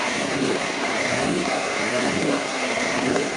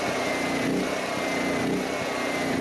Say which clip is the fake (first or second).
first